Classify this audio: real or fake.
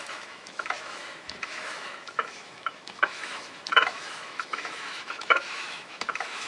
fake